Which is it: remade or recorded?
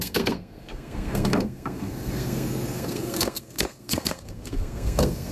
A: remade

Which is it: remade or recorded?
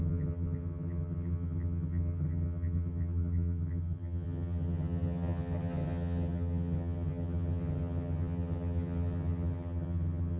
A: remade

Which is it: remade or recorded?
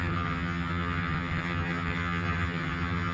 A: remade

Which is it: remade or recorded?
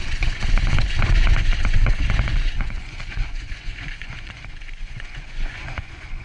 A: remade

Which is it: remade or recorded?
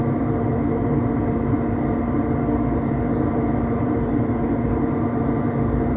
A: remade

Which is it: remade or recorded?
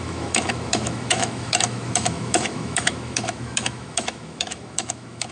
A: remade